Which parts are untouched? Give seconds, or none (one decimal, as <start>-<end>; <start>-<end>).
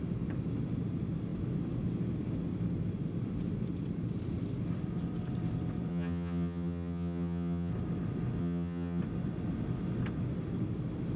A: 0.0-5.9; 7.7-8.4; 9.0-11.2